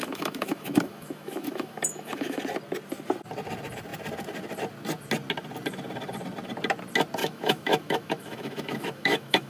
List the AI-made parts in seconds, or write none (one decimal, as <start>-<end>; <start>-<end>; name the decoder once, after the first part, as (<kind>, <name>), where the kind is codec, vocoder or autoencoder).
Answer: 0.0-2.4 (autoencoder, DAC-VAE); 7.2-9.5